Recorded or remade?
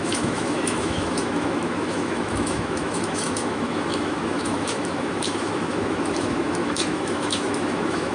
remade